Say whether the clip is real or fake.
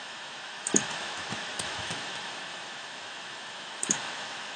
fake